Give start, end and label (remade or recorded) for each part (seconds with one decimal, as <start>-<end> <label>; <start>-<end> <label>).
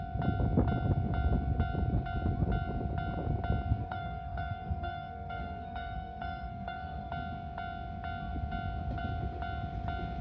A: 0.0-3.8 recorded; 3.8-7.1 remade; 7.1-10.2 recorded